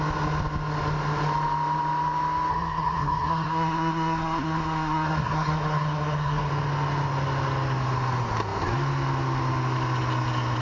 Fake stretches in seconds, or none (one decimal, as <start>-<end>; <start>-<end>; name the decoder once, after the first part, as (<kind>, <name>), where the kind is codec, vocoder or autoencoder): 2.5-6.5 (codec, SNAC)

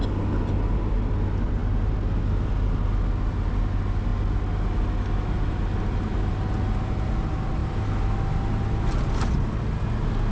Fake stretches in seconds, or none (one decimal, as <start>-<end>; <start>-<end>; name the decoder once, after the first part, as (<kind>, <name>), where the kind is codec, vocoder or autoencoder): none